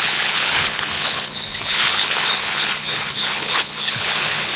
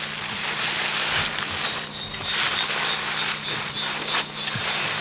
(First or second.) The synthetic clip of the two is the first